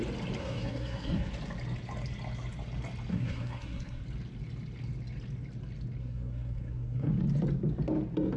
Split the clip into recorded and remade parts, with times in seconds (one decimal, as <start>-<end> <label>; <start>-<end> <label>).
0.0-0.4 recorded; 0.4-1.3 remade; 1.3-3.1 recorded; 3.1-4.0 remade; 4.0-6.0 recorded; 6.0-7.1 remade; 7.1-8.4 recorded